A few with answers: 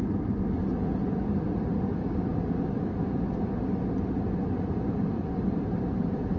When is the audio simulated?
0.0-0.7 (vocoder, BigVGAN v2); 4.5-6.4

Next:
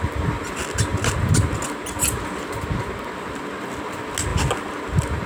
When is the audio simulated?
none

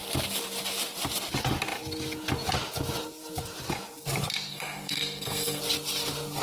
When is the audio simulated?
4.5-5.6 (codec, SNAC)

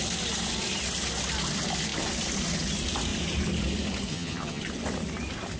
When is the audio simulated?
4.1-4.6 (vocoder, HiFi-GAN)

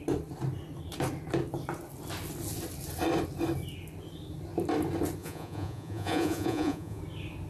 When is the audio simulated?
5.2-7.0 (vocoder, Vocos)

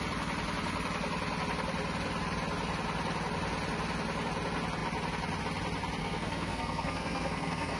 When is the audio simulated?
6.0-7.8 (codec, SNAC)

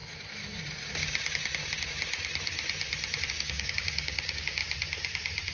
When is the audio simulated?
3.3-4.6 (codec, DAC)

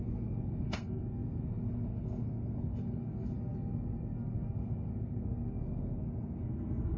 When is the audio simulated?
0.0-7.0 (codec, SNAC)